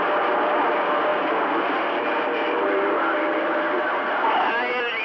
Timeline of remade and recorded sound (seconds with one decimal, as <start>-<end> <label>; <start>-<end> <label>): 0.0-5.0 recorded